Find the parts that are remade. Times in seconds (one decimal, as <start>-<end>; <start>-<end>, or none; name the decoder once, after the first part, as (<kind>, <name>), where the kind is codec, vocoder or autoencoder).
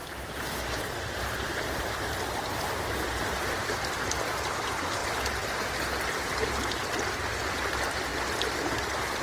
0.0-0.8 (autoencoder, DAC-VAE)